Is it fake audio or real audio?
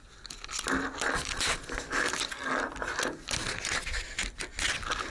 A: real